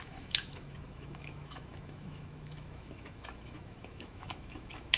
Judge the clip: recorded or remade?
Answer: remade